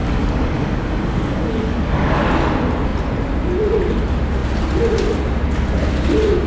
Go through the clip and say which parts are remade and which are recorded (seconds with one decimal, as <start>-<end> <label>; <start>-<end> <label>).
0.0-2.2 remade; 2.2-6.5 recorded